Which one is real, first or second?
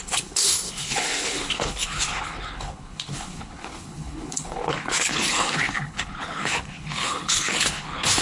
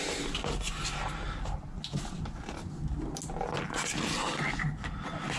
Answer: second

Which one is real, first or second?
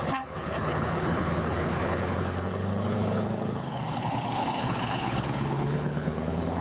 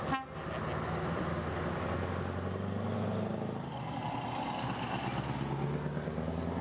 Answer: second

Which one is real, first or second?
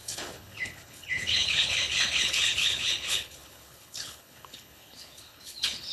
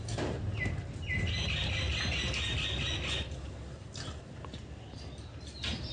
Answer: second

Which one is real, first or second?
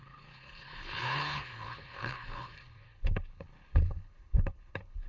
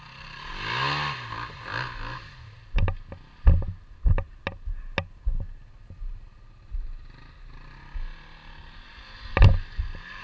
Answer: second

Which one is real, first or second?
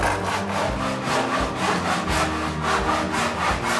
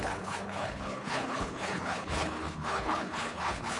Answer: first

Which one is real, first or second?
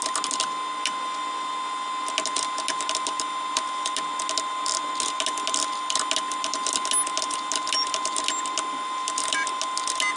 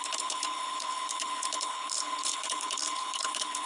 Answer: first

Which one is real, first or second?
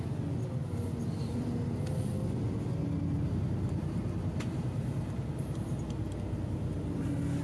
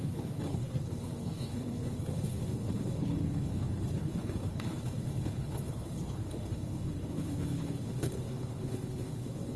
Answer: first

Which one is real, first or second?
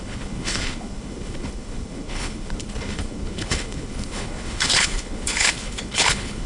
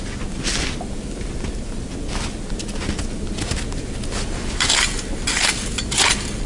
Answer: second